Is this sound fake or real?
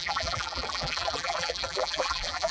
fake